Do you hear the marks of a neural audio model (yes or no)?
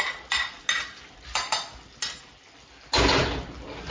no